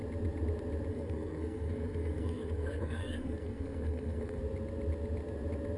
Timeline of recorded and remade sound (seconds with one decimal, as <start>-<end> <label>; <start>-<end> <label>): 0.0-0.9 recorded; 0.9-4.4 remade; 4.4-5.8 recorded